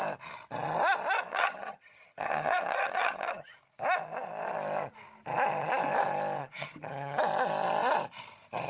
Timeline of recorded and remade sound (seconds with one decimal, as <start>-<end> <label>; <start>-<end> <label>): 0.0-1.3 recorded; 1.3-3.6 remade; 3.6-6.4 recorded; 6.4-7.2 remade; 7.2-8.7 recorded